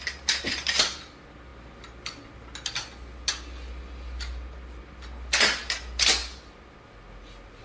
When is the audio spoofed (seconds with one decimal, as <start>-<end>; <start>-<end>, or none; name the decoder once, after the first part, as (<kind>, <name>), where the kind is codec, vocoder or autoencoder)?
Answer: none